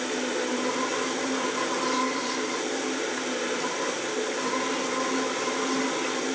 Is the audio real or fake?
real